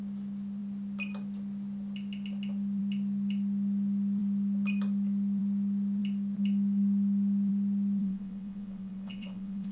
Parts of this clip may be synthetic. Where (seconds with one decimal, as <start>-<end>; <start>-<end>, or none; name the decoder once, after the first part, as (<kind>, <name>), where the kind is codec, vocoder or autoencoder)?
8.0-9.7 (vocoder, WaveNeXt)